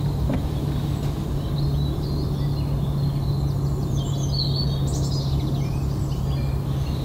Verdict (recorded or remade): recorded